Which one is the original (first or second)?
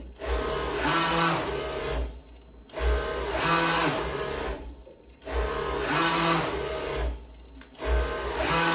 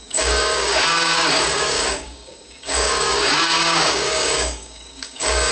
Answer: first